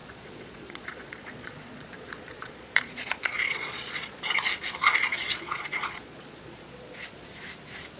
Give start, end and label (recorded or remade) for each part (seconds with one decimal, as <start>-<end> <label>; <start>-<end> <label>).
0.0-4.3 remade; 4.3-5.1 recorded; 5.1-7.3 remade; 7.3-8.0 recorded